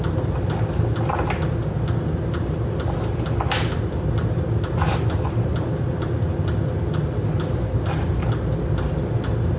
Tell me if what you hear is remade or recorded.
recorded